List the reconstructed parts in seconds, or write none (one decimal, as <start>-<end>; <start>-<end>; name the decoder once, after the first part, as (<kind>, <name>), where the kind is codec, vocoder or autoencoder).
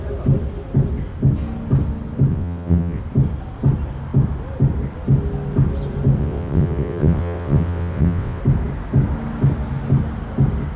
2.3-3.0 (vocoder, WaveNeXt); 6.2-8.4